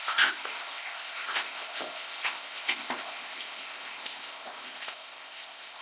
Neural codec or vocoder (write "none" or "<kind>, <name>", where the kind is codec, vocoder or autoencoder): codec, ZipCodec